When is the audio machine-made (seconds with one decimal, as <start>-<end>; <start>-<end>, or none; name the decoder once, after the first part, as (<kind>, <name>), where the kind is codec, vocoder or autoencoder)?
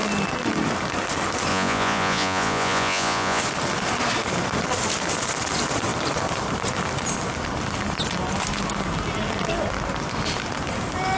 1.5-3.4 (vocoder, Vocos)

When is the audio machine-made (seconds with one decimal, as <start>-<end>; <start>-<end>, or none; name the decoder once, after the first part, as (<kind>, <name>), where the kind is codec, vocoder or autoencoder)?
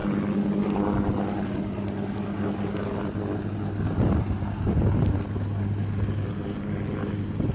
none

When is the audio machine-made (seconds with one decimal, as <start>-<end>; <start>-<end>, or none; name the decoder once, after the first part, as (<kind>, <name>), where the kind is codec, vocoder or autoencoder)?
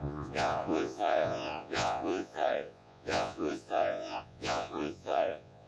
0.0-5.7 (vocoder, Vocos)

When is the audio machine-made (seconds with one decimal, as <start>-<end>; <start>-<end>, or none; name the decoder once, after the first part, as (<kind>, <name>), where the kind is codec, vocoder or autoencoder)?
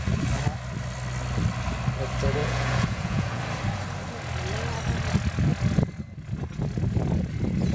2.4-3.4 (vocoder, Vocos)